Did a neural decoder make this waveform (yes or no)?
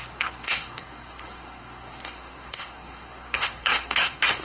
yes